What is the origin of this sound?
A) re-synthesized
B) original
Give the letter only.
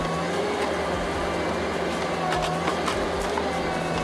B